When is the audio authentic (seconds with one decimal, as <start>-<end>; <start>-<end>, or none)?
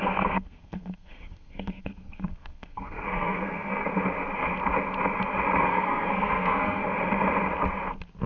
3.9-5.6; 6.8-8.3